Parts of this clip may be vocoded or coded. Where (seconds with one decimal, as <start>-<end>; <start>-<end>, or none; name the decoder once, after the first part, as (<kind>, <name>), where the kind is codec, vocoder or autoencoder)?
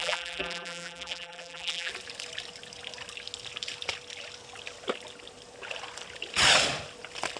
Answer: 0.0-1.9 (vocoder, BigVGAN v2)